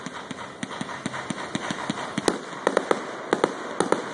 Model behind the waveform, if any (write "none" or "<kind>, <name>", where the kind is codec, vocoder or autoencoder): none